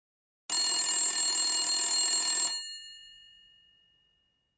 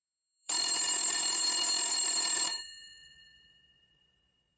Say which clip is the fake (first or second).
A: second